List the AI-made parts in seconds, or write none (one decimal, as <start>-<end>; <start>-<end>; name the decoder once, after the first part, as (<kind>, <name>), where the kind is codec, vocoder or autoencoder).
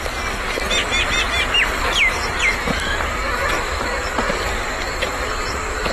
none